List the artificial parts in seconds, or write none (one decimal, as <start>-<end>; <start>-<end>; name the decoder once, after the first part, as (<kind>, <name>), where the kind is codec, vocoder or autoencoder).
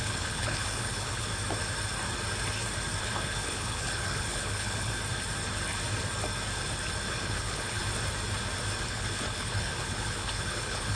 0.0-1.3 (codec, HILCodec); 3.0-4.9; 7.1-7.8; 8.8-11.0